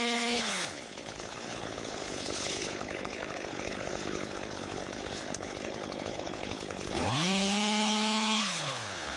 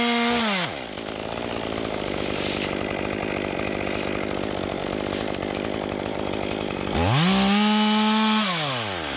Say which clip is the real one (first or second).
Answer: second